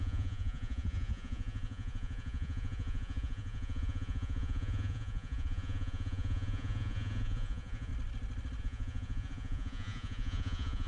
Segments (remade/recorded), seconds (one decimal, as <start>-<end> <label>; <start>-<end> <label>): 0.0-7.9 remade; 7.9-8.6 recorded; 8.6-10.9 remade